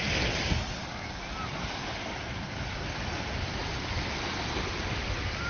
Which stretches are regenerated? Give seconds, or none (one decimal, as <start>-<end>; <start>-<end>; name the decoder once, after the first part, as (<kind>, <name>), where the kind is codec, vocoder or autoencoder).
3.6-5.5 (vocoder, BigVGAN v2)